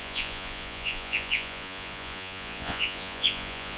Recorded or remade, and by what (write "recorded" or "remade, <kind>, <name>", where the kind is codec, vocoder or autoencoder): remade, vocoder, Vocos